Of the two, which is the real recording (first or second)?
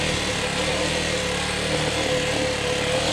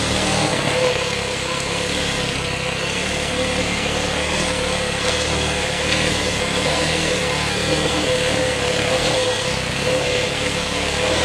first